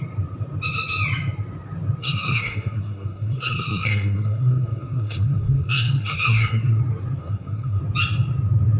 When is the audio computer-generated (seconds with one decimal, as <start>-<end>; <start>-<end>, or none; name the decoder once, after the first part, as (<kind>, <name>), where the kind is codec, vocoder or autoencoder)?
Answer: 2.0-6.8 (codec, SNAC); 7.2-7.8